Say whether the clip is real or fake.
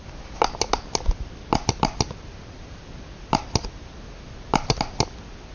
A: real